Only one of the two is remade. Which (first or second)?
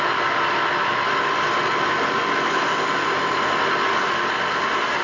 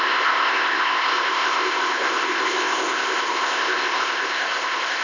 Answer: second